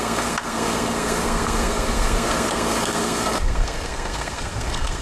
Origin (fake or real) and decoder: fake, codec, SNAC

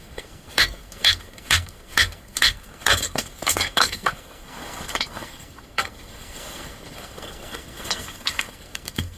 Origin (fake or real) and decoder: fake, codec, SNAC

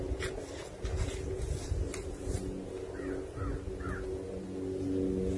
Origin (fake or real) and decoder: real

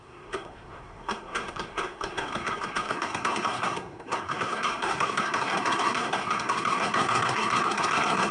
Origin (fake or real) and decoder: fake, codec, SNAC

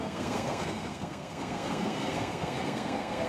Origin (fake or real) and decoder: fake, codec, SNAC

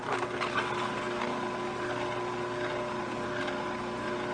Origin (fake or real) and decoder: real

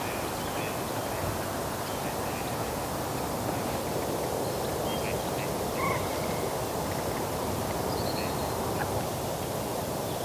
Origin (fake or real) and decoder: real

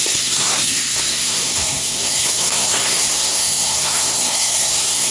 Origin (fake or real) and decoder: fake, codec, SNAC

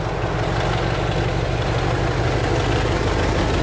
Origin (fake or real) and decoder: real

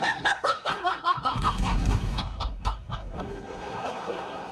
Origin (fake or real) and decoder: fake, codec, SNAC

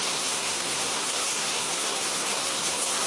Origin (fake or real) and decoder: fake, codec, SNAC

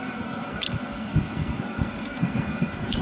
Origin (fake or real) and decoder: fake, codec, SNAC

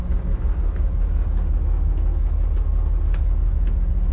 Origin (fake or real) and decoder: real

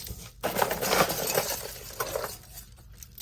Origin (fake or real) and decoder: real